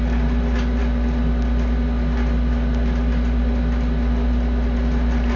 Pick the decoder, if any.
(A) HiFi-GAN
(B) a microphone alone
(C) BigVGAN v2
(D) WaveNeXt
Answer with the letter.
B